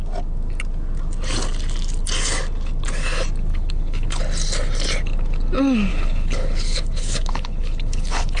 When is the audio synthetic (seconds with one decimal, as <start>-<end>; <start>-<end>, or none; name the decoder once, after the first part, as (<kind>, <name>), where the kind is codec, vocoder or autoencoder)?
3.5-4.2 (codec, HILCodec); 5.9-8.4